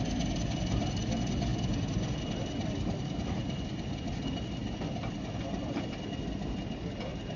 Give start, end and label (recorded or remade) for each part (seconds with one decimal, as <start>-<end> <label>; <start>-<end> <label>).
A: 0.0-3.2 recorded; 3.2-3.8 remade; 3.8-7.4 recorded